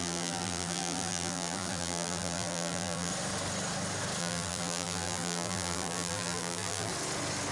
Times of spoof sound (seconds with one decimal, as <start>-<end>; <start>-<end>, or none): 0.0-3.1; 4.2-6.9